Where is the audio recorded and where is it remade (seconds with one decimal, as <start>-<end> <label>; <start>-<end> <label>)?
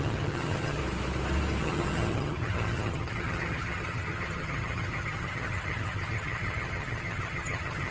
0.0-0.8 remade; 0.8-1.6 recorded; 1.6-7.9 remade